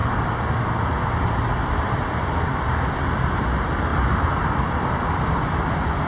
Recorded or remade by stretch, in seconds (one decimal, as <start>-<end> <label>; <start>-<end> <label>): 0.0-1.7 recorded; 1.7-6.1 remade